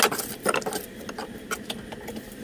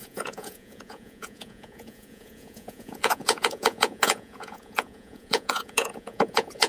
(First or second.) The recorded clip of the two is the first